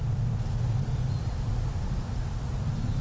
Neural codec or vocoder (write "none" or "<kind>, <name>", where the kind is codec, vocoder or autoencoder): none